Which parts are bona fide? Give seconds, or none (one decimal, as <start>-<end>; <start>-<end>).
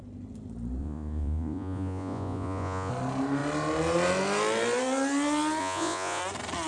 0.0-0.8; 2.9-5.6; 6.2-6.7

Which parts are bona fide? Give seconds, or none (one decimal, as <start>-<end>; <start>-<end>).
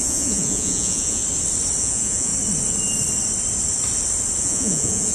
1.2-1.8; 2.3-4.4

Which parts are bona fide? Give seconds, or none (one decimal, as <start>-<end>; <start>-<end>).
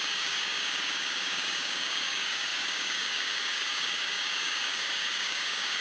none